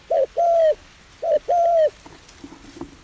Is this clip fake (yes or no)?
no